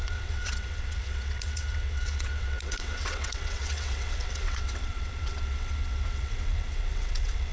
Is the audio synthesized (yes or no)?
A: yes